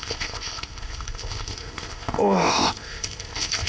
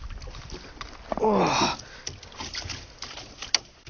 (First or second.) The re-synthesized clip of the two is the first